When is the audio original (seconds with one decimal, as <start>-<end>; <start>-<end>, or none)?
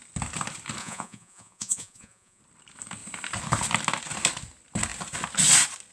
0.0-0.8; 2.4-5.9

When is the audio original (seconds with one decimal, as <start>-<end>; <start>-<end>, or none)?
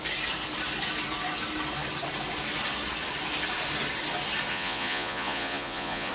0.0-4.5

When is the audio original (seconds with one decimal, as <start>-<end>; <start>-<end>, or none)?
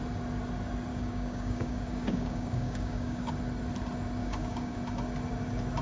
0.0-0.9; 3.3-4.2; 4.8-5.8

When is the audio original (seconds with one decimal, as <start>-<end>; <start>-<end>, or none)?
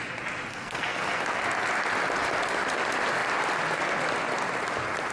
0.0-0.5; 1.2-5.1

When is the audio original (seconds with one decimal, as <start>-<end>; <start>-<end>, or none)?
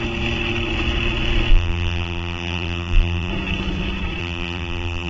0.0-1.5; 3.3-4.2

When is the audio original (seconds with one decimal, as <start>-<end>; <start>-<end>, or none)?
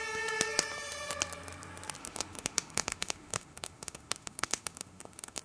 0.0-2.0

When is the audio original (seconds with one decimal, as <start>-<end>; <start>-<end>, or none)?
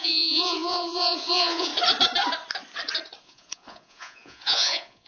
1.7-3.2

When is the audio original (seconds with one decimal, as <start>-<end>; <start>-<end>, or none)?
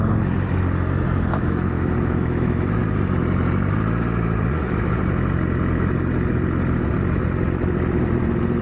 0.0-1.3; 2.8-8.6